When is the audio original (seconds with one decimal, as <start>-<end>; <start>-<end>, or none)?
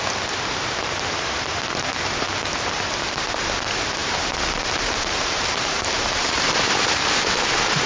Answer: 0.0-1.5; 2.0-4.0; 6.6-7.9